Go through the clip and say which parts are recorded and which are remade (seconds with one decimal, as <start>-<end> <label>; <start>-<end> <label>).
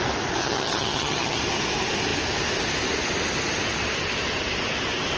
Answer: 0.0-0.4 recorded; 0.4-1.4 remade; 1.4-5.2 recorded